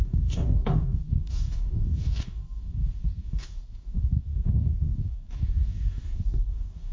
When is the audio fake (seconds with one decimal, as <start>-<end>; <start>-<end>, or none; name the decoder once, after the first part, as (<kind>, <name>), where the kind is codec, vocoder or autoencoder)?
0.0-6.9 (codec, DAC)